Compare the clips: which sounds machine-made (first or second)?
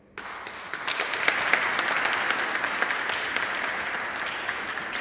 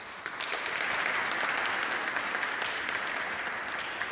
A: second